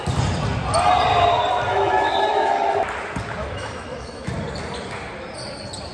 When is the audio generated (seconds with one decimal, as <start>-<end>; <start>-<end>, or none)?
1.7-2.8; 3.4-4.3